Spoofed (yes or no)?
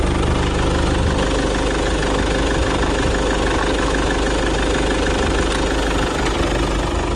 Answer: no